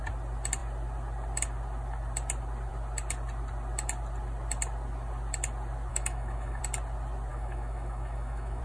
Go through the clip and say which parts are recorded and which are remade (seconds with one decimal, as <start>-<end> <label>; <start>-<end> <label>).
0.0-5.9 recorded; 5.9-6.6 remade; 6.6-7.3 recorded; 7.3-8.6 remade